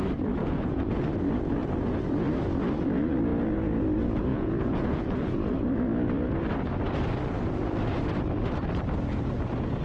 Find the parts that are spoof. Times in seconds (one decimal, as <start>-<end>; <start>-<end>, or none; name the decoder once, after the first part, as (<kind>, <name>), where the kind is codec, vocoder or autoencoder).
0.4-1.0 (vocoder, Vocos); 4.3-5.4

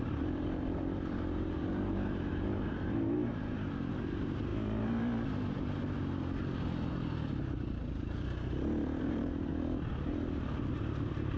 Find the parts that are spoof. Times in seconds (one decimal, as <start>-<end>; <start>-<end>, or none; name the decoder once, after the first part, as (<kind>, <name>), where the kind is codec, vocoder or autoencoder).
0.0-4.5 (vocoder, BigVGAN v2); 9.0-9.5; 10.7-11.4

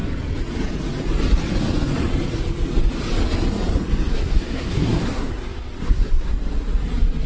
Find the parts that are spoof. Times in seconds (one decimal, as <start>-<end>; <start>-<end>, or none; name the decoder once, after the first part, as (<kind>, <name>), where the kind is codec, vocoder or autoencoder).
4.1-5.3 (codec, SNAC); 5.8-6.3